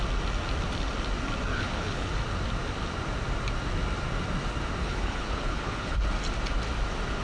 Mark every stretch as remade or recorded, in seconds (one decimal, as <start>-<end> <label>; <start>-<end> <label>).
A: 0.0-1.5 recorded; 1.5-2.2 remade; 2.2-4.8 recorded; 4.8-6.0 remade; 6.0-7.2 recorded